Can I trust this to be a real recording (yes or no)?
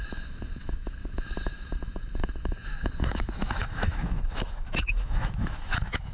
no